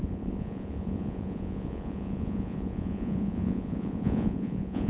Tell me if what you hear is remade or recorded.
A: remade